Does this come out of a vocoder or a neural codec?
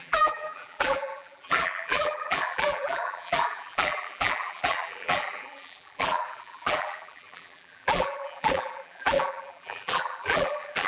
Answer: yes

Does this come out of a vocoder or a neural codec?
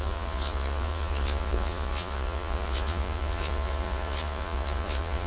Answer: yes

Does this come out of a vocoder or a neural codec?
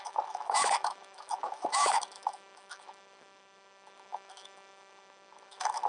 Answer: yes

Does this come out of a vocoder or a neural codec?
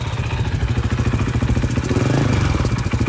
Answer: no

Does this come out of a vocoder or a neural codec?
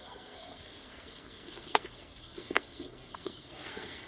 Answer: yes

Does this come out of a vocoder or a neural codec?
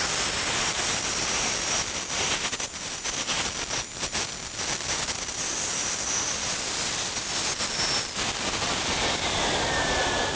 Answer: yes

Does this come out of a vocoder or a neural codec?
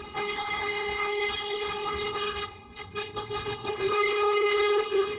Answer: yes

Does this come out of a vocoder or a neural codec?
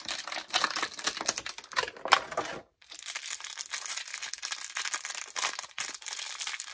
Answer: no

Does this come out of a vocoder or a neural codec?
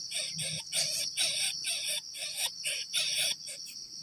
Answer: yes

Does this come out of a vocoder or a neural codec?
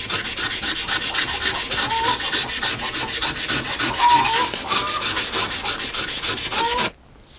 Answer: no